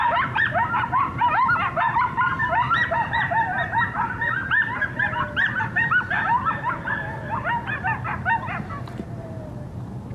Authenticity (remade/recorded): remade